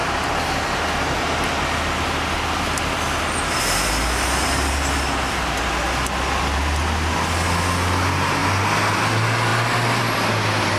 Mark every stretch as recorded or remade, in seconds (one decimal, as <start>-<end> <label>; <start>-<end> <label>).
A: 0.0-10.8 recorded